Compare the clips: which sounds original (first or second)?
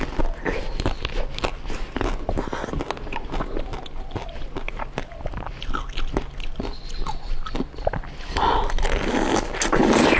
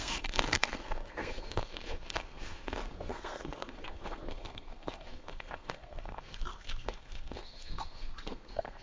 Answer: first